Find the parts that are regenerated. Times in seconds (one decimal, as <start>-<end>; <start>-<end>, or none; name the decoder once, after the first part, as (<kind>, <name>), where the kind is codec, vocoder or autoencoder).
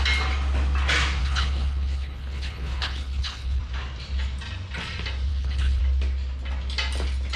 1.2-3.6 (codec, HILCodec); 5.3-5.8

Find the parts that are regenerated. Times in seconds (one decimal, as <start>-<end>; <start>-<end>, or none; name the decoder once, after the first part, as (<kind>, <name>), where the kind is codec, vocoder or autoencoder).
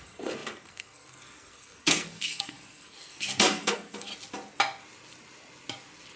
0.0-4.1 (codec, SNAC)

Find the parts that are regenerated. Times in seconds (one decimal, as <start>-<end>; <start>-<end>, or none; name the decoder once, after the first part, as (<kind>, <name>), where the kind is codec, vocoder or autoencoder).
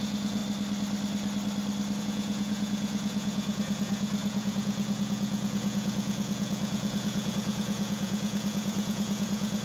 0.0-0.4 (vocoder, Vocos); 2.0-9.6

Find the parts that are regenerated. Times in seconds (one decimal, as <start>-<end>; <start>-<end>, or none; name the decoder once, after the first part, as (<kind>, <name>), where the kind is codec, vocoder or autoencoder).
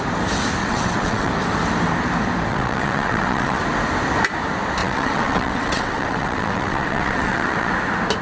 0.6-1.3 (vocoder, WaveNeXt); 2.5-3.6; 4.8-7.7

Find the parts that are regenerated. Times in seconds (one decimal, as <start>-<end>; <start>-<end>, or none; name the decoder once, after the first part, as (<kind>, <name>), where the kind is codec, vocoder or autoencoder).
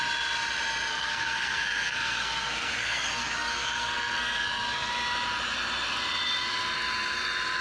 0.9-4.9 (codec, SNAC)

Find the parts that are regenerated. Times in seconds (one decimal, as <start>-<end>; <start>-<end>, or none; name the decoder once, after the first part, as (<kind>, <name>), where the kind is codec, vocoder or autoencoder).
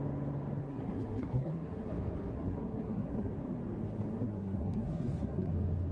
0.6-1.9 (codec, SNAC); 2.3-3.3; 4.1-5.5